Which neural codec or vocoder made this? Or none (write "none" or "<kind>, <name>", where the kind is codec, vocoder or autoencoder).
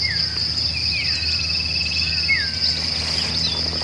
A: none